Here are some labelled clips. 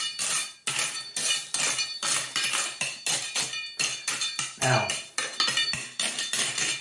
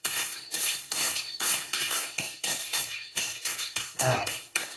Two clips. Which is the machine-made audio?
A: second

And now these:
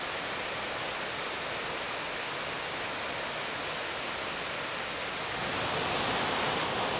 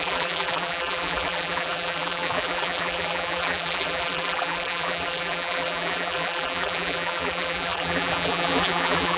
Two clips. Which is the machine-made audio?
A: second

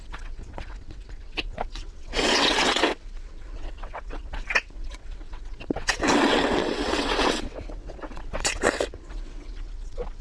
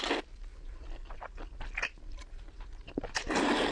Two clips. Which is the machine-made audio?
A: first